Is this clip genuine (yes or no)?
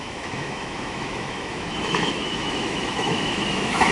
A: no